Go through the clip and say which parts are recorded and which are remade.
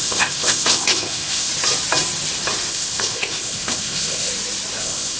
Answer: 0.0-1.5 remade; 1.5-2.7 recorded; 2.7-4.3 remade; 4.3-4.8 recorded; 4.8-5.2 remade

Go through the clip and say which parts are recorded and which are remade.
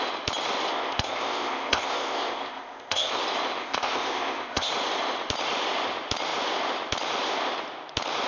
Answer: 0.0-0.7 recorded; 0.7-3.2 remade; 3.2-3.6 recorded; 3.6-4.7 remade; 4.7-8.3 recorded